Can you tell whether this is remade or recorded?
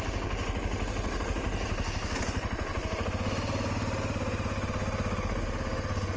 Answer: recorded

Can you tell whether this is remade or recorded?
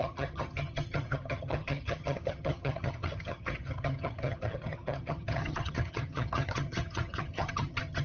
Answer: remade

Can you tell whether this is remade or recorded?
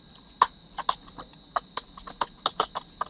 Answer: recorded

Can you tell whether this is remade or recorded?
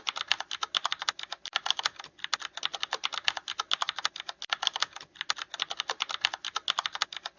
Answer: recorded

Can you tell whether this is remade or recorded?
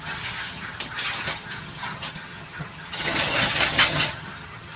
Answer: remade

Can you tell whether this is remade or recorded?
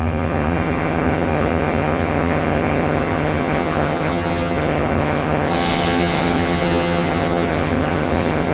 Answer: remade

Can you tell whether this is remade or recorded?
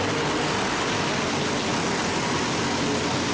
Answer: recorded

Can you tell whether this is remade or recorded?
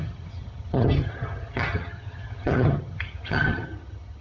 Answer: remade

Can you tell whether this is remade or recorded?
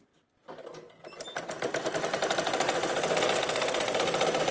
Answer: recorded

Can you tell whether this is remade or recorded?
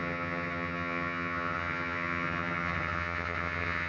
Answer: remade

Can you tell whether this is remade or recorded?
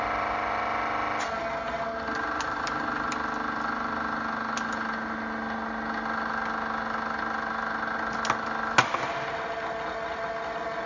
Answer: recorded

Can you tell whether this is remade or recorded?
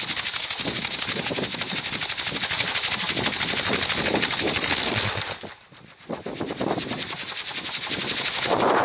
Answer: recorded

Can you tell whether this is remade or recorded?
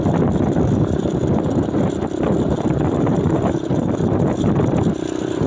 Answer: recorded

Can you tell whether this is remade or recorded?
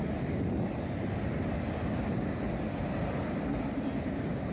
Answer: recorded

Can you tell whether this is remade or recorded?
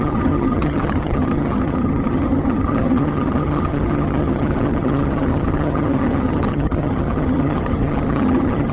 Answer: remade